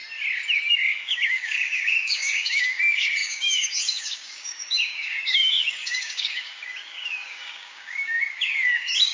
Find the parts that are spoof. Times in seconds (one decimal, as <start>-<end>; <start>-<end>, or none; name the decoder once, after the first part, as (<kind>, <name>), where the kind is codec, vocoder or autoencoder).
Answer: 0.7-9.1 (codec, DAC)